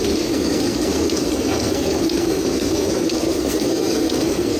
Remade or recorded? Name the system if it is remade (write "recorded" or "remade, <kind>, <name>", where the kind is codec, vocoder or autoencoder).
remade, codec, SNAC